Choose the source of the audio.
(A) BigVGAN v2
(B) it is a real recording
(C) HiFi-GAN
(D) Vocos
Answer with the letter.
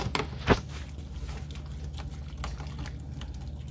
B